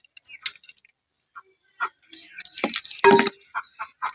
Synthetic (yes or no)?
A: no